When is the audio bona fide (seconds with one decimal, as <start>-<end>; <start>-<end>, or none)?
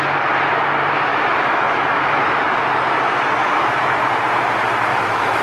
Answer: 0.0-1.1; 2.6-3.4; 4.0-4.9